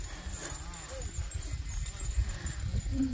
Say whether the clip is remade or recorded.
recorded